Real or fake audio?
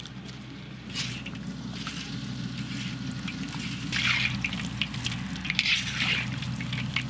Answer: real